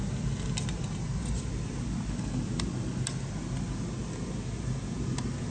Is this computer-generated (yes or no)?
no